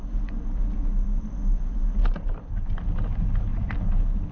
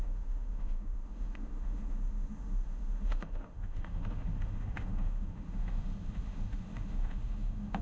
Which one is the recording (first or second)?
first